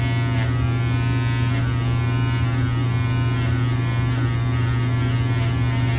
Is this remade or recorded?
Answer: recorded